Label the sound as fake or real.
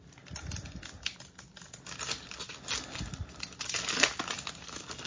real